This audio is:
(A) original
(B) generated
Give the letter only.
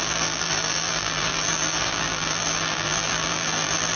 B